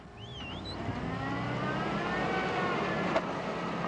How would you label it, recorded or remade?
recorded